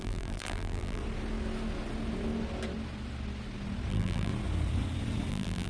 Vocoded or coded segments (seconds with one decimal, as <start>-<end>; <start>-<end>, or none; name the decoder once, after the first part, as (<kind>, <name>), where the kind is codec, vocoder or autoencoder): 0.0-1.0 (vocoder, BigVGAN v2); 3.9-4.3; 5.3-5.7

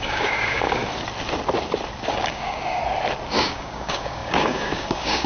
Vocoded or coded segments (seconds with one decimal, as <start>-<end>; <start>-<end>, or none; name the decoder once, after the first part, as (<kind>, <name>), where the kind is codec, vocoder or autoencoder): 0.0-0.8 (codec, DAC); 2.1-2.8; 3.4-5.3

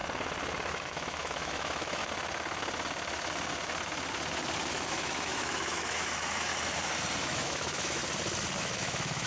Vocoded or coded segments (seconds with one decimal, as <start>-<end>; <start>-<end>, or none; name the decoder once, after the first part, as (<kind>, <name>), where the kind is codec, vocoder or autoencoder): 0.7-2.0 (autoencoder, DAC-VAE); 4.7-6.5; 7.2-8.0; 8.6-9.3

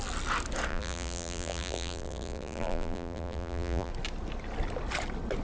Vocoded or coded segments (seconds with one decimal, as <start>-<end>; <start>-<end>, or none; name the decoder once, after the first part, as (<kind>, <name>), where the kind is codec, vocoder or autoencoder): 0.7-3.9 (vocoder, BigVGAN v2)

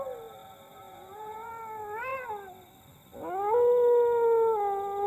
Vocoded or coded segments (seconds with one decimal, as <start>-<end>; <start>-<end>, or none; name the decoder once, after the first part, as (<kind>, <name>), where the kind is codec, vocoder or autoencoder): 0.7-1.5 (vocoder, Vocos)